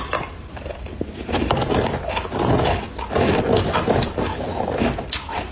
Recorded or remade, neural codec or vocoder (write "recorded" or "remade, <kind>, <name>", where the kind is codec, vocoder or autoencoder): recorded